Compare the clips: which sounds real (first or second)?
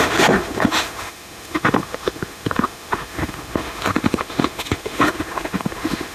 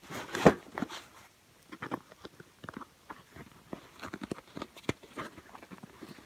second